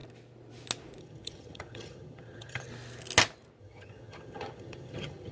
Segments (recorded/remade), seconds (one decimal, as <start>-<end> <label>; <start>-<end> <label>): 0.0-1.0 recorded; 1.0-2.7 remade; 2.7-3.6 recorded; 3.6-5.3 remade